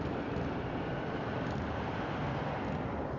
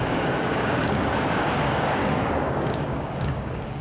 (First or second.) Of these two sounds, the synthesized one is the second